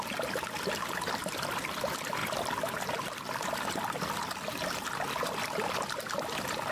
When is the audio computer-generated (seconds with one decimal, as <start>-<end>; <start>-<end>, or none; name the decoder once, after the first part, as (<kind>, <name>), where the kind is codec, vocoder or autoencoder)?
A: none